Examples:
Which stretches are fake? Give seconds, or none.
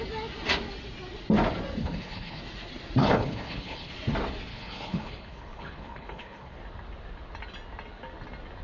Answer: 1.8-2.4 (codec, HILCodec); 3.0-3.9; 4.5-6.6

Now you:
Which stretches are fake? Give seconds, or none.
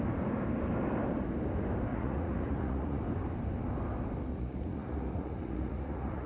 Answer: 1.9-3.0 (vocoder, Vocos); 4.3-6.3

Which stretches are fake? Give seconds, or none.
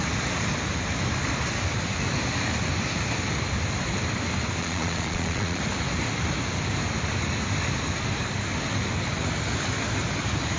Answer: 4.6-5.6 (vocoder, Vocos)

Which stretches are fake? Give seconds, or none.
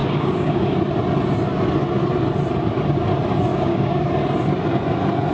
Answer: 0.0-0.8 (codec, DAC); 3.5-4.1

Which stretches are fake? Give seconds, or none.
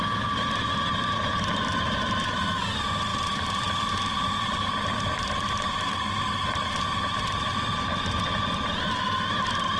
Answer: 3.1-6.6 (vocoder, BigVGAN v2); 7.5-8.2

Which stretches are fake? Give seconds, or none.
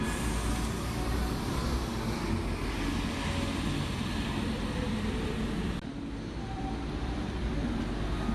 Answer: none